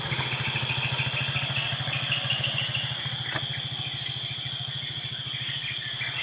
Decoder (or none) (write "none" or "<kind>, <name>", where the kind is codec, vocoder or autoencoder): none